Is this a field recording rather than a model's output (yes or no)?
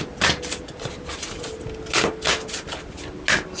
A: yes